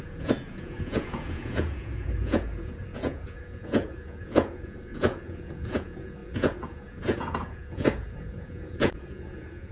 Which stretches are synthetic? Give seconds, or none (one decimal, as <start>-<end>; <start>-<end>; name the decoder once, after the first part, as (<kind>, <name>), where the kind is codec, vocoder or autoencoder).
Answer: 0.0-9.7 (vocoder, Vocos)